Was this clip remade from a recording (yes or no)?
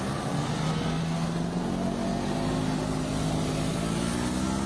no